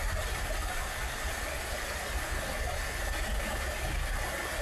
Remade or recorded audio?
recorded